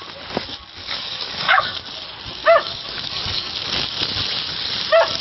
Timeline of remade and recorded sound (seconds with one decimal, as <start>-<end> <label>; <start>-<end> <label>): 0.0-0.8 recorded; 0.8-1.7 remade; 1.7-2.4 recorded; 2.4-3.5 remade; 3.5-5.2 recorded